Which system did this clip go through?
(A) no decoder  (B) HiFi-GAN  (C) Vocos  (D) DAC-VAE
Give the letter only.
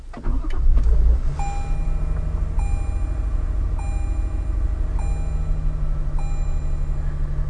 A